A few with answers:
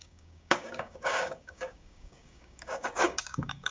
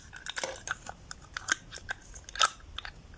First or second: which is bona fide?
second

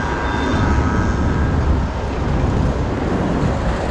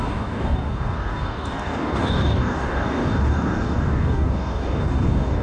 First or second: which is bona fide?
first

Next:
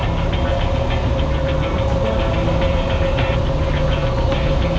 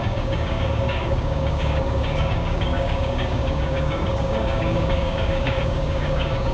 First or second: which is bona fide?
first